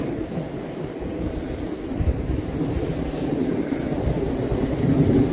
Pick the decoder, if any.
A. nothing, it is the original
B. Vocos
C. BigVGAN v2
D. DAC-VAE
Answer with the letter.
C